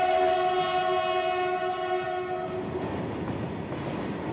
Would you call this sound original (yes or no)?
yes